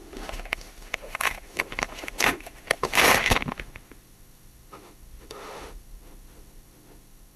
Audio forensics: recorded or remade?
remade